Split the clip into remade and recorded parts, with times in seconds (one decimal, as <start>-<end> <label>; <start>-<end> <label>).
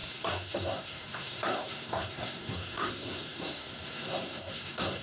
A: 0.0-5.0 remade